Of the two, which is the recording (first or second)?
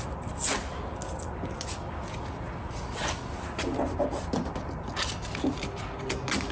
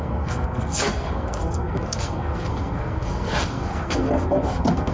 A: first